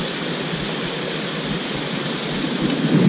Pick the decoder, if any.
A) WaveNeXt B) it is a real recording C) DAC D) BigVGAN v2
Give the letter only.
B